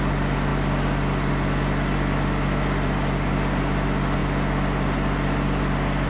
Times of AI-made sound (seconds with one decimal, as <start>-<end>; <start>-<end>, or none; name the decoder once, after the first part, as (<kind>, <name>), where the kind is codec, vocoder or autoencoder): none